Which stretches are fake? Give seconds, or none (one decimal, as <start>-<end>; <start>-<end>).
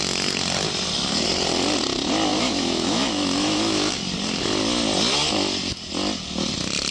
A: 2.3-4.0